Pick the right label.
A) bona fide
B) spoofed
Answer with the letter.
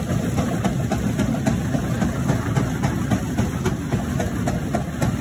A